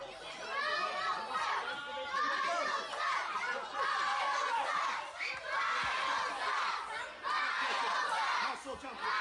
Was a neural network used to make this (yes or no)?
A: no